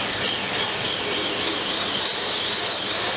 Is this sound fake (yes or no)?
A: no